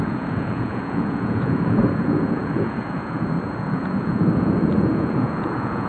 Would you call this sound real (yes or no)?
no